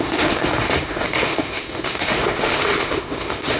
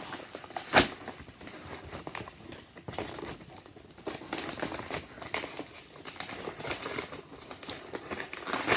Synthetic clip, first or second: first